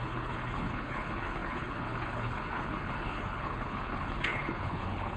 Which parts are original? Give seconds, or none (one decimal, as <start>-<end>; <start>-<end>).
none